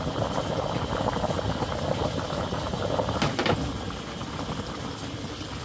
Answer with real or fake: real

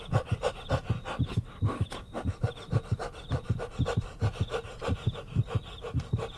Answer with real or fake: real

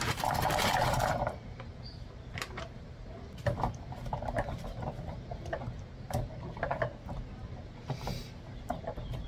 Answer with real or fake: fake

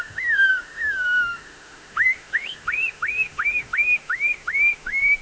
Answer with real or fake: fake